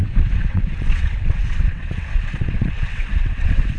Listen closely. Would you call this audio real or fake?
fake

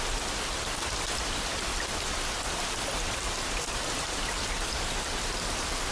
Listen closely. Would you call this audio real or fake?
real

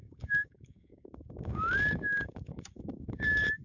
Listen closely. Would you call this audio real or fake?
fake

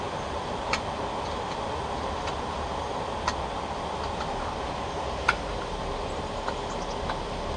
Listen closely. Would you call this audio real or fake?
real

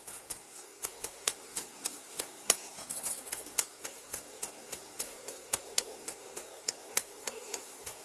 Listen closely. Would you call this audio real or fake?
fake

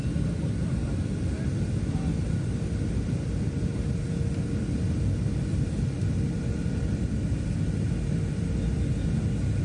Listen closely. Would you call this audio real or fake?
real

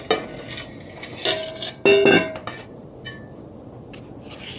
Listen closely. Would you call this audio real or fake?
real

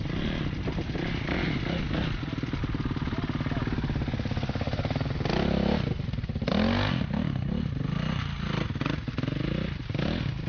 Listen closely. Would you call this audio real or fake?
real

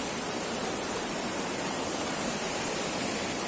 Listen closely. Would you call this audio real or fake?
real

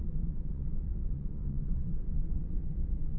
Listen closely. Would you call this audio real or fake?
fake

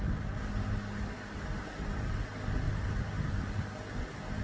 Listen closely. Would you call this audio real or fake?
real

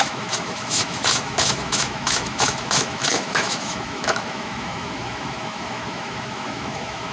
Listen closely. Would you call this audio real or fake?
fake